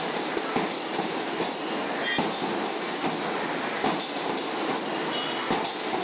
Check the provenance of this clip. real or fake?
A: real